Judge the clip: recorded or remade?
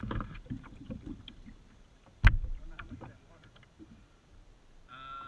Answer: remade